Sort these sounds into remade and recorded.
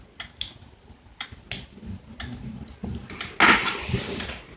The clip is recorded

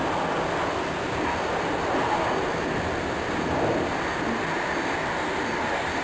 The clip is recorded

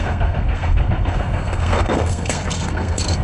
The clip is remade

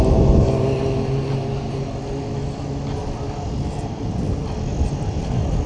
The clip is recorded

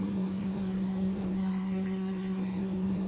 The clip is remade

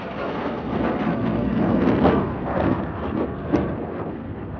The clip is remade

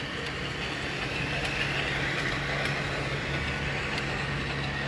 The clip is recorded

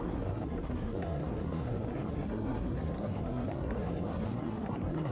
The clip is remade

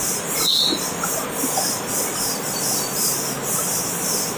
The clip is recorded